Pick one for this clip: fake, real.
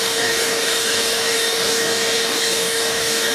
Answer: fake